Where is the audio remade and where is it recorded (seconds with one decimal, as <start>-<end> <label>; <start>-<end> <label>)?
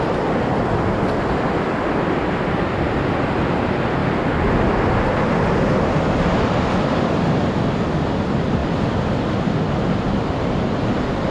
0.0-4.0 remade; 4.0-8.1 recorded; 8.1-8.6 remade; 8.6-10.5 recorded; 10.5-11.3 remade